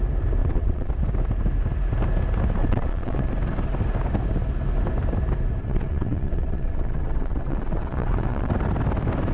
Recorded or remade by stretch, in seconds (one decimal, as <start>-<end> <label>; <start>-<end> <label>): 0.0-0.4 recorded; 0.4-0.9 remade; 0.9-2.6 recorded; 2.6-3.3 remade; 3.3-5.6 recorded; 5.6-8.5 remade; 8.5-9.3 recorded